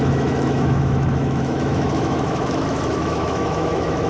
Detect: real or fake fake